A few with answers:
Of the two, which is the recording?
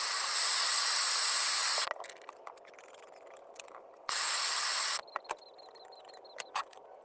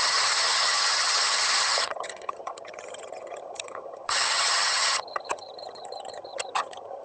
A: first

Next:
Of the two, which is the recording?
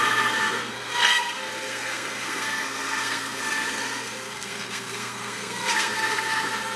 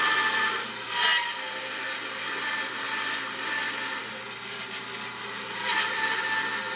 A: second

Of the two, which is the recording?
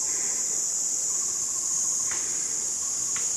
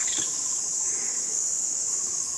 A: first